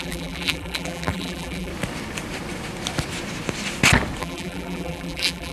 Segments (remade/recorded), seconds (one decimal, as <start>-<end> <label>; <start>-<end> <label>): 0.0-1.7 remade; 1.7-4.2 recorded; 4.2-5.5 remade